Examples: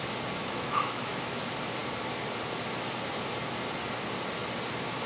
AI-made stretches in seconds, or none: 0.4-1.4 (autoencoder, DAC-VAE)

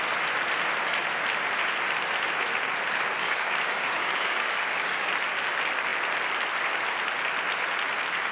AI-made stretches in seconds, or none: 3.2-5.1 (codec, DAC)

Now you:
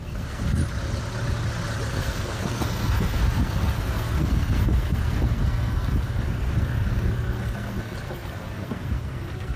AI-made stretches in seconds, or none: 0.0-0.6 (codec, SNAC); 1.9-9.6

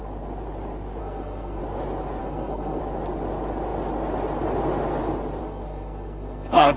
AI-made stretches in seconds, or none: 1.0-1.6 (codec, SNAC); 2.2-2.8; 5.4-6.8

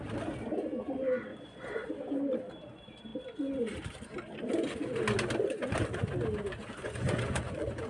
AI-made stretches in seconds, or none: 1.3-1.9 (vocoder, Vocos); 6.8-7.9

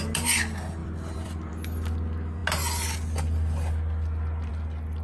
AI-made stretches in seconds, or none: 0.8-1.5 (vocoder, BigVGAN v2)

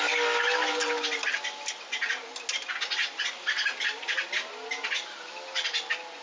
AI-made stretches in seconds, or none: none

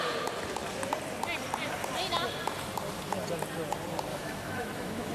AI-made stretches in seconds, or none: 4.1-5.1 (autoencoder, DAC-VAE)